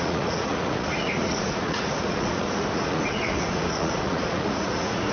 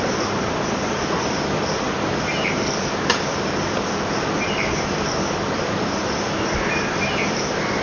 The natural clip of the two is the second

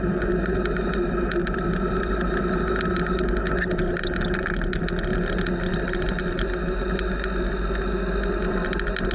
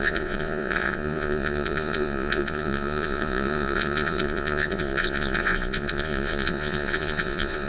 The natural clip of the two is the first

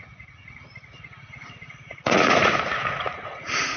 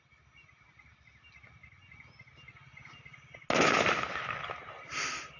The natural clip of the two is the second